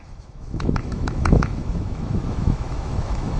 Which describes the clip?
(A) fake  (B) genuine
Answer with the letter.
A